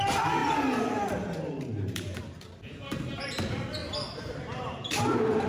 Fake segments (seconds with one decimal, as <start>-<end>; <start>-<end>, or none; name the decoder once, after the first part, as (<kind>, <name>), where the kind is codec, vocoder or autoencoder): 0.4-3.4 (vocoder, BigVGAN v2); 3.8-5.5